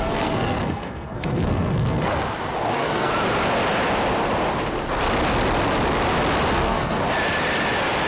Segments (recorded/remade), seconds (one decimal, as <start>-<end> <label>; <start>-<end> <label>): 0.0-2.1 remade; 2.1-2.7 recorded; 2.7-3.1 remade; 3.1-6.5 recorded; 6.5-7.0 remade; 7.0-8.1 recorded

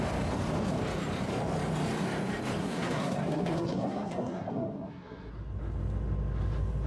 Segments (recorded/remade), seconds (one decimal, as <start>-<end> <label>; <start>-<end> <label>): 0.0-2.6 recorded; 2.6-5.3 remade; 5.3-6.9 recorded